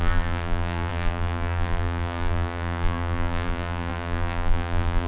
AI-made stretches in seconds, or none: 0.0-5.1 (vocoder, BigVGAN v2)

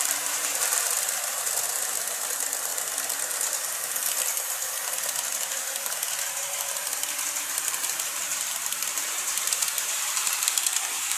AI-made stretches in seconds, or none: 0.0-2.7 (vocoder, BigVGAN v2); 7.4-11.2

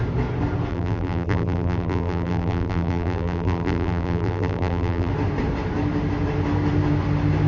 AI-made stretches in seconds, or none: 0.7-5.1 (vocoder, BigVGAN v2)